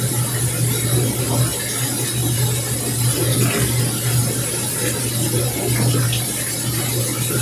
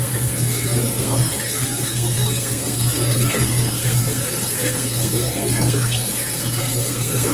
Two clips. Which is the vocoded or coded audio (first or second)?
second